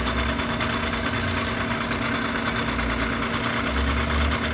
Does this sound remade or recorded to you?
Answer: recorded